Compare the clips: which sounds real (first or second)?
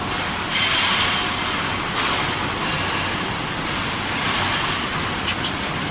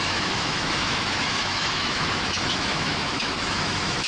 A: first